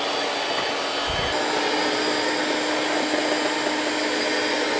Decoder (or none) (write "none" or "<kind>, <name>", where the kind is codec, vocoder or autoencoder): none